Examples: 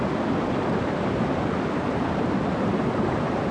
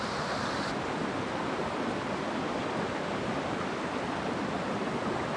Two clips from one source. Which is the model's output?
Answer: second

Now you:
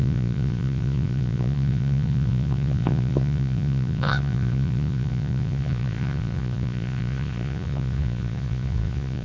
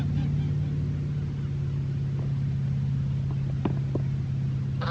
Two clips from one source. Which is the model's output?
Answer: first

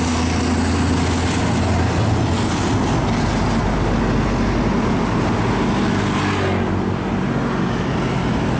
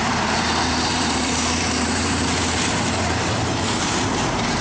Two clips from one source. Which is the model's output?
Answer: second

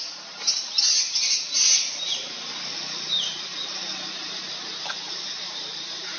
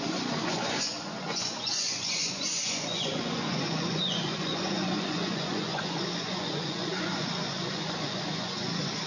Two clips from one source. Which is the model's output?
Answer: second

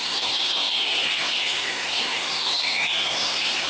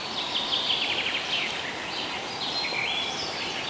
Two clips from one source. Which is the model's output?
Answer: first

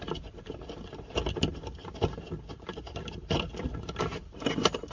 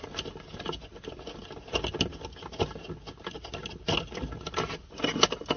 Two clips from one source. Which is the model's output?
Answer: first